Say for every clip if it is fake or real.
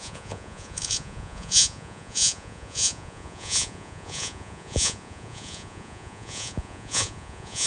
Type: fake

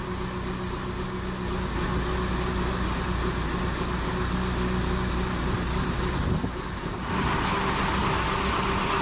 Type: real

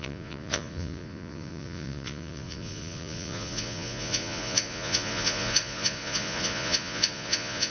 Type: fake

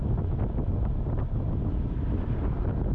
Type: real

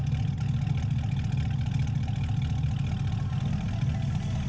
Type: real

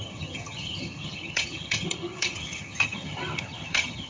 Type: fake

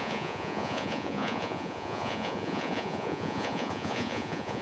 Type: fake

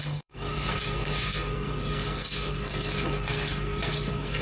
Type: fake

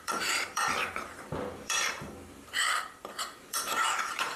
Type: fake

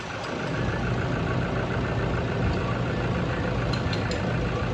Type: real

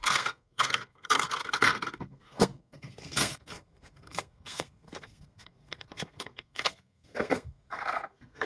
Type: fake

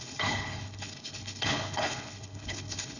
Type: fake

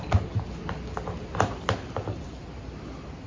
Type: real